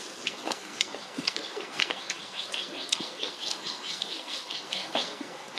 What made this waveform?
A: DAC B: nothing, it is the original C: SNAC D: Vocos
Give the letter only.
C